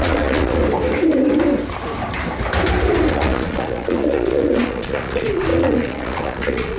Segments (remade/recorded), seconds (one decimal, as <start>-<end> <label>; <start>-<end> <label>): 0.0-0.6 remade; 0.6-3.1 recorded; 3.1-6.8 remade